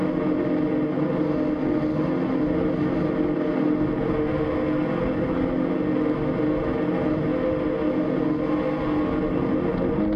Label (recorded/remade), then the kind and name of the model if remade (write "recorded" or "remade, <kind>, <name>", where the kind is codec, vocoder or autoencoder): recorded